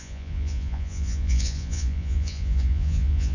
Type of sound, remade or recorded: remade